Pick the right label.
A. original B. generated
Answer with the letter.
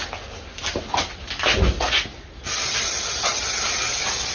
A